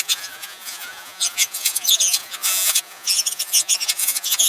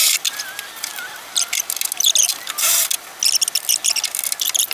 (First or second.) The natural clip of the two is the second